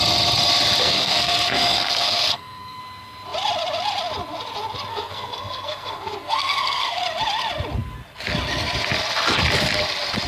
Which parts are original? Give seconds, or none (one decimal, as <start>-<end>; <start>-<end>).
0.0-0.8; 2.8-4.9; 7.0-10.3